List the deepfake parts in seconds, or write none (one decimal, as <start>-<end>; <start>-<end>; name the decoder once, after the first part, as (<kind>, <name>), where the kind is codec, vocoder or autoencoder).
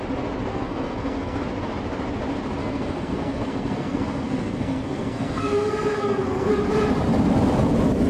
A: 0.5-1.4 (codec, SNAC); 2.6-6.5